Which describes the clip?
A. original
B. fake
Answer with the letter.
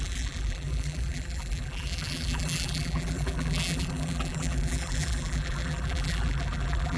B